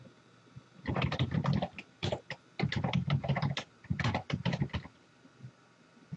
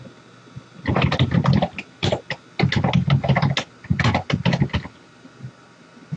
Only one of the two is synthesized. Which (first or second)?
first